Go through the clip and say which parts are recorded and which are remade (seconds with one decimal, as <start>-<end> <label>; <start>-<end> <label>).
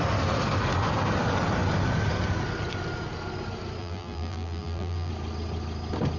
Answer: 0.0-3.8 recorded; 3.8-5.1 remade; 5.1-6.2 recorded